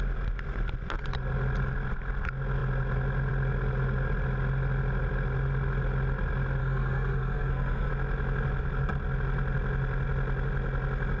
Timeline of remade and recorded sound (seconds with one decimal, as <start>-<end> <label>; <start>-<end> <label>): 0.0-6.6 recorded; 6.6-7.9 remade; 7.9-11.2 recorded